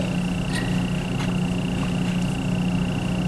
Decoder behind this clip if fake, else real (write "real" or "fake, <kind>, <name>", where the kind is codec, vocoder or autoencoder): real